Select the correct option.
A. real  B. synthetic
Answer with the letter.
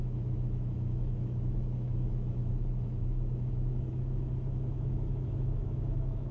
B